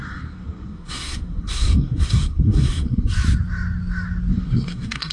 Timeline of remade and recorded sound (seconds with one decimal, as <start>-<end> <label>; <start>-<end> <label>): 0.0-3.1 remade; 3.1-4.3 recorded; 4.3-5.1 remade